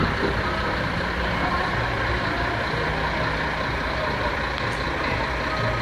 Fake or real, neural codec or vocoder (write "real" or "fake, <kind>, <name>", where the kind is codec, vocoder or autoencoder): real